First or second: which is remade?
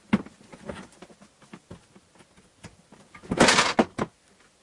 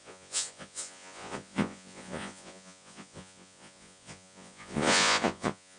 second